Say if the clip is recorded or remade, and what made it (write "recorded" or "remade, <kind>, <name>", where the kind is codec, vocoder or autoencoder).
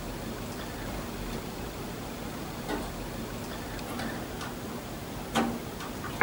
recorded